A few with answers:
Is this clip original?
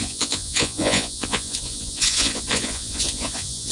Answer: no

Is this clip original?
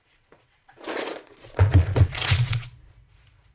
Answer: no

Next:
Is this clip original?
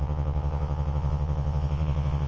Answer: no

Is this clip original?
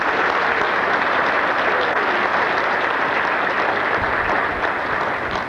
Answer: yes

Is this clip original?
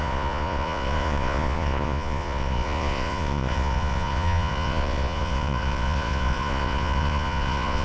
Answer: no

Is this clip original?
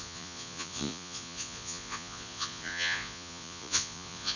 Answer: no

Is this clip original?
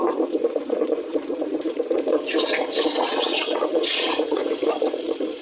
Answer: no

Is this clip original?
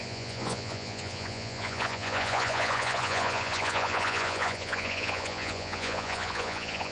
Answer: no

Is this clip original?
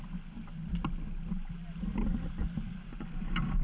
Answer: yes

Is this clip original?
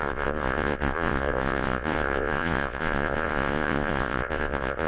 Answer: no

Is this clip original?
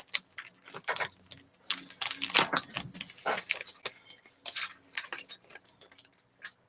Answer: yes